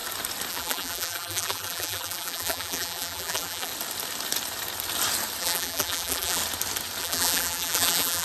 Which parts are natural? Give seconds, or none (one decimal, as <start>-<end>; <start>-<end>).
0.0-0.5; 3.7-5.4; 6.4-7.0